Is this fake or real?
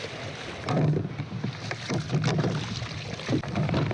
real